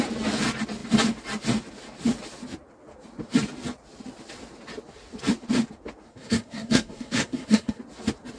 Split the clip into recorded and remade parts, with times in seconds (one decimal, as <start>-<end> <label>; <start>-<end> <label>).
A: 0.0-6.1 recorded; 6.1-7.8 remade; 7.8-8.4 recorded